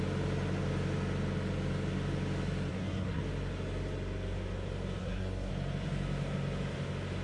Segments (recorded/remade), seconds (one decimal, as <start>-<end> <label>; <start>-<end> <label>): 0.0-2.7 recorded; 2.7-3.2 remade; 3.2-5.0 recorded; 5.0-5.5 remade; 5.5-7.2 recorded